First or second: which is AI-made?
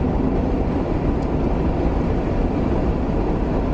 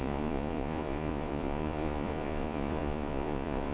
second